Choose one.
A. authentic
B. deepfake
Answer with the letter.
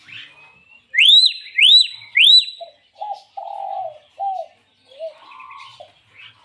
A